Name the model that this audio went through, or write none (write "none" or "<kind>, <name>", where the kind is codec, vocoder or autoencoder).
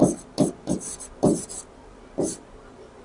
none